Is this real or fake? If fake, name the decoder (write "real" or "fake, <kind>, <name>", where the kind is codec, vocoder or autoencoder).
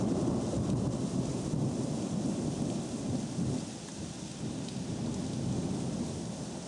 real